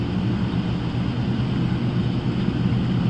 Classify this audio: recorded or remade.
recorded